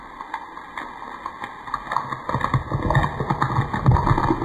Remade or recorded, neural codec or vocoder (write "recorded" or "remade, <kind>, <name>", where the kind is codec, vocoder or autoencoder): recorded